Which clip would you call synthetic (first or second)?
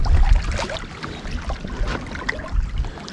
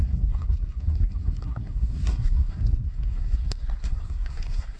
second